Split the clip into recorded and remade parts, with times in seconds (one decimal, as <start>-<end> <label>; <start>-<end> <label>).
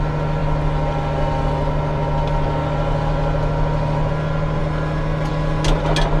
0.0-6.2 recorded